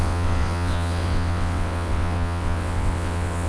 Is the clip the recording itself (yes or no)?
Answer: no